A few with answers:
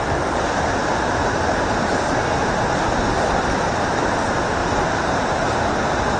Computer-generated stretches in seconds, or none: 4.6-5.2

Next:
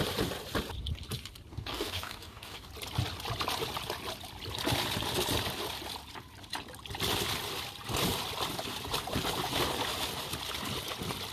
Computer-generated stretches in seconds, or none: 1.5-2.7

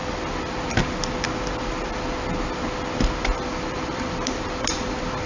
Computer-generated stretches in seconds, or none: 3.2-5.3

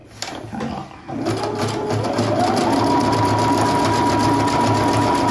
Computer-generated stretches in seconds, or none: none

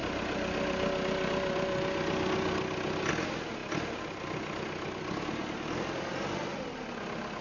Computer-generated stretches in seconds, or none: none

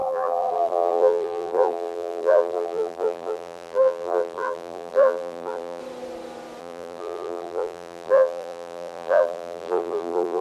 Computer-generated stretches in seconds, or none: 0.0-5.8; 6.6-10.4